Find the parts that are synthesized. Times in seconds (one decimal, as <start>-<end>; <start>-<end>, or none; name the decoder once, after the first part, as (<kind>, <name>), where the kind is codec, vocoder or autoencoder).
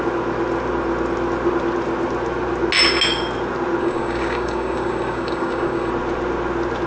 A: 3.8-5.9 (codec, DAC)